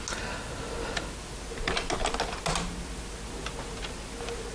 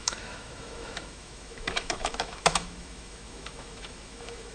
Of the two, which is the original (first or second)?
first